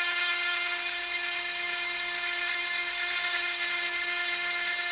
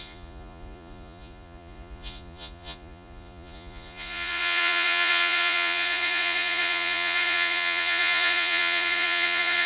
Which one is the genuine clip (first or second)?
first